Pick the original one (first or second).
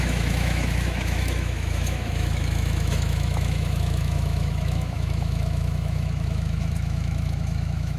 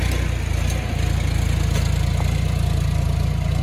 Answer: second